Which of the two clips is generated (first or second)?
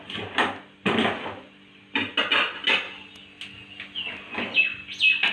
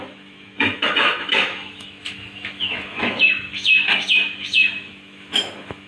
second